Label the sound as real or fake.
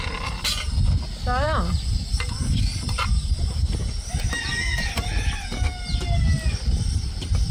real